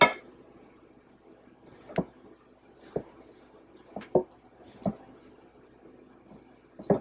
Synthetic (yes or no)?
no